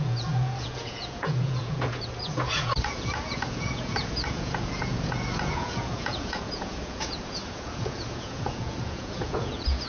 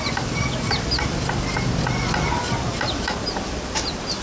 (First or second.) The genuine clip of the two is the second